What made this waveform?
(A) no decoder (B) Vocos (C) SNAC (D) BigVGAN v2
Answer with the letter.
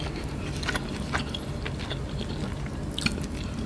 A